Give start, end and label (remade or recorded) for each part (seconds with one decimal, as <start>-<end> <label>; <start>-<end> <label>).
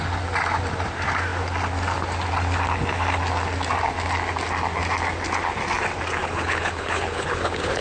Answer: 0.0-6.2 recorded; 6.2-7.8 remade